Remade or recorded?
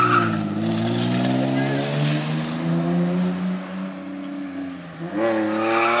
recorded